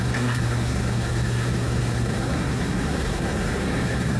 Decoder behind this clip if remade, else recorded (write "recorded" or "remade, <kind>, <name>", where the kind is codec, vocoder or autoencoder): remade, codec, SNAC